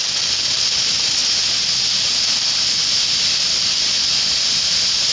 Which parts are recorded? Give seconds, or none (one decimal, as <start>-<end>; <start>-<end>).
0.0-5.1